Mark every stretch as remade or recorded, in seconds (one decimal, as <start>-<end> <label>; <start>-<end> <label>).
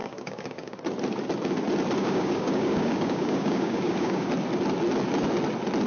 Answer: 0.0-0.8 remade; 0.8-2.0 recorded; 2.0-4.3 remade; 4.3-5.9 recorded